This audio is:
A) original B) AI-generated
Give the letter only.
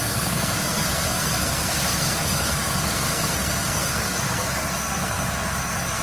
B